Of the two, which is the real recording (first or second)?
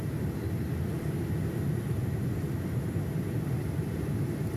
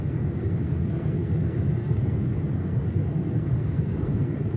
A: first